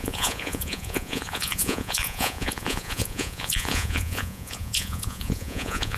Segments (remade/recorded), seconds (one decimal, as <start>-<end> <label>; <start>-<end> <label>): 0.0-6.0 remade